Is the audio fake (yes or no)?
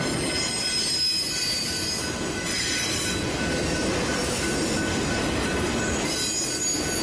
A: no